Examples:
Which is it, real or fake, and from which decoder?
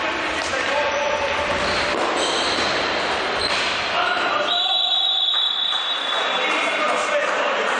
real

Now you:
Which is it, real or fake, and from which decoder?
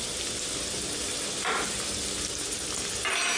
real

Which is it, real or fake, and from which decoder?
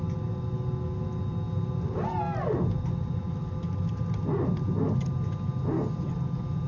real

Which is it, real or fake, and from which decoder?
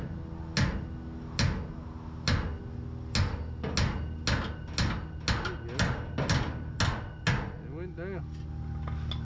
real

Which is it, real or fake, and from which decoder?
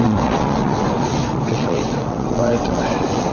fake, vocoder, WaveNeXt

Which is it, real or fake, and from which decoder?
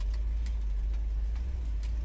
real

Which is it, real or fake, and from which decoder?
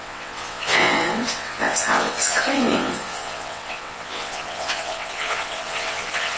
fake, vocoder, WaveNeXt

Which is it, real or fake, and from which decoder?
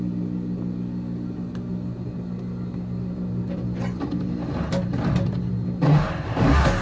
real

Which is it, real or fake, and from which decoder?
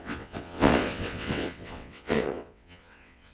fake, vocoder, WaveNeXt